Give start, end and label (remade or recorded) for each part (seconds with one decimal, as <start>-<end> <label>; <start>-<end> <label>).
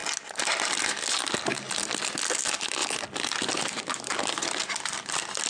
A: 0.0-5.5 recorded